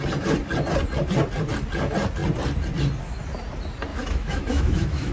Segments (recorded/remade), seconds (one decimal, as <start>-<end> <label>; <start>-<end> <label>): 0.0-3.9 recorded; 3.9-5.1 remade